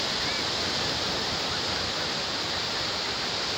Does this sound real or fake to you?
real